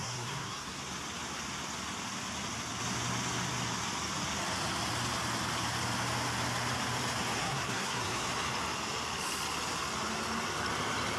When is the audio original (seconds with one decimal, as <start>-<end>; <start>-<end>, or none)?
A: 0.8-7.4; 8.3-11.2